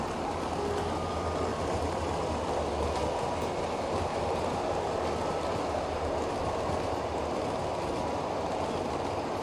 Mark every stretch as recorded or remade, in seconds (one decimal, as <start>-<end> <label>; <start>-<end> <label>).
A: 0.0-9.4 recorded